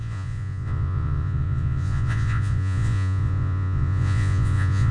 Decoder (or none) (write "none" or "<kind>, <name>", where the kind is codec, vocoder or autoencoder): vocoder, Vocos